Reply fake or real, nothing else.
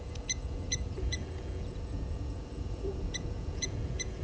fake